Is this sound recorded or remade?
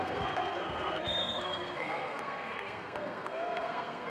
remade